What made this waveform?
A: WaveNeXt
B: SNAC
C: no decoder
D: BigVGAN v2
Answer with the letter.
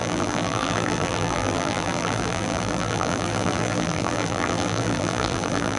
D